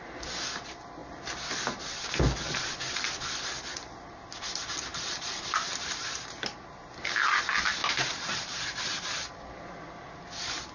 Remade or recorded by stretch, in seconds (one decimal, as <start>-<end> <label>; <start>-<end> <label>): 0.0-4.9 recorded; 4.9-6.2 remade; 6.2-7.8 recorded; 7.8-8.8 remade; 8.8-10.7 recorded